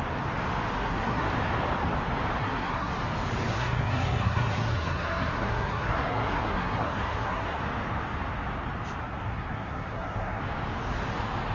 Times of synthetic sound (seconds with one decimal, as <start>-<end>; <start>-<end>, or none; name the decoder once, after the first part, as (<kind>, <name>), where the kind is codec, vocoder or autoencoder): 0.8-1.3 (codec, SNAC); 2.4-2.9; 3.5-7.6; 9.0-10.4